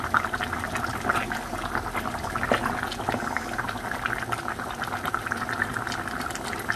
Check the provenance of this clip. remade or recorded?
recorded